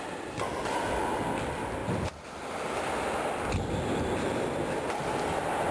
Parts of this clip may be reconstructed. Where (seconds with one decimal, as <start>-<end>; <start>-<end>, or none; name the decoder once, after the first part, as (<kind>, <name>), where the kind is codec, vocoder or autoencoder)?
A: 1.8-4.5 (vocoder, BigVGAN v2)